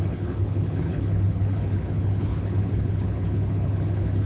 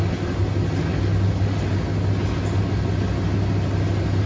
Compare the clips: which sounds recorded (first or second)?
second